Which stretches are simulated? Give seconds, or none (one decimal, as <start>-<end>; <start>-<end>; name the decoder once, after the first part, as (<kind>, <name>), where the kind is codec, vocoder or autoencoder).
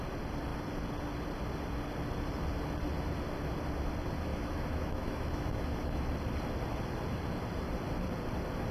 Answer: 4.3-6.1 (autoencoder, DAC-VAE)